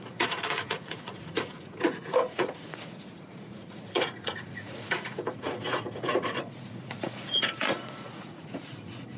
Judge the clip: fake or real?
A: fake